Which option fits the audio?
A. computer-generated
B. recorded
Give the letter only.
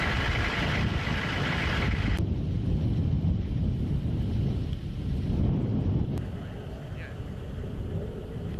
B